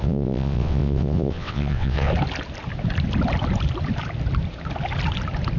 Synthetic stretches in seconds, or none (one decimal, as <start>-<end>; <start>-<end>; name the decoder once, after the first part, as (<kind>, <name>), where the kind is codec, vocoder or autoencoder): 0.0-2.1 (vocoder, WaveNeXt)